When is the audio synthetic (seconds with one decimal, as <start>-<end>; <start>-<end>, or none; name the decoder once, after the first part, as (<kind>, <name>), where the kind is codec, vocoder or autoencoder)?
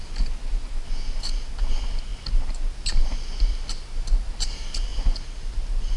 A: none